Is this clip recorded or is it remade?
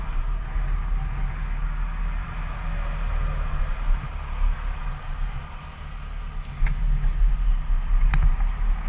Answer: recorded